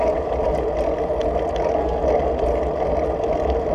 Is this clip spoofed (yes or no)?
no